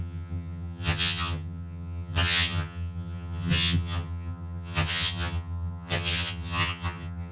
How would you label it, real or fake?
fake